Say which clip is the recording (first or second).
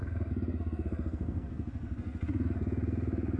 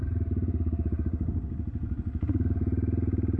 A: second